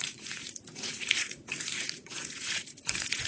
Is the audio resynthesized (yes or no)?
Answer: yes